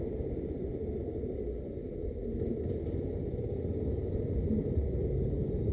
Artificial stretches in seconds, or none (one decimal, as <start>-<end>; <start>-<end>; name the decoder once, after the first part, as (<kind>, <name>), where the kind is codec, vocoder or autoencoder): none